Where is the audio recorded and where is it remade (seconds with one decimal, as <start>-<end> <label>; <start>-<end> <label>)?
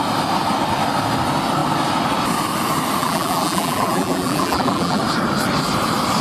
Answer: 0.0-3.0 recorded; 3.0-5.0 remade; 5.0-6.2 recorded